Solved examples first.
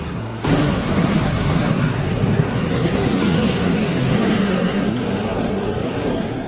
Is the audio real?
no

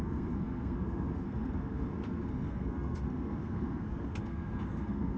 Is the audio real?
no